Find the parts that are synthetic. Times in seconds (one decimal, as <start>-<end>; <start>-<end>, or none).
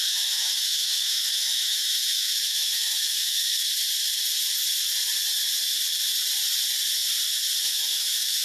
0.0-3.7; 7.6-8.4